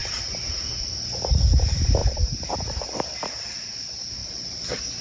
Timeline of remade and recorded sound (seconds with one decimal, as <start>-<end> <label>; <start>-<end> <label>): 0.0-5.0 recorded